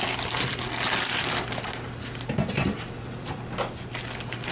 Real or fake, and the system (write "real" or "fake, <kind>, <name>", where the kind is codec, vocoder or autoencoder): real